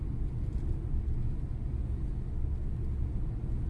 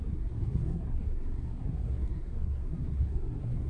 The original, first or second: first